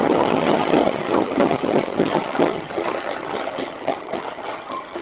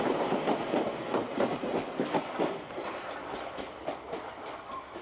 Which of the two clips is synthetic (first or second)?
first